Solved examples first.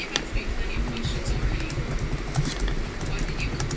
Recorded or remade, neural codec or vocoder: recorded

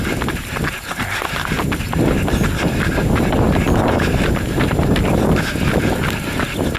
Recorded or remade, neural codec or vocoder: recorded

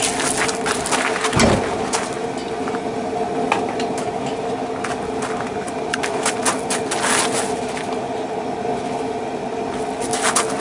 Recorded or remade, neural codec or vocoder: recorded